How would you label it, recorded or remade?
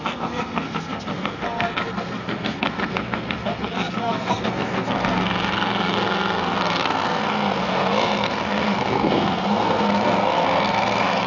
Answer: remade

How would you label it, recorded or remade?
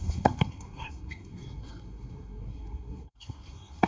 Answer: remade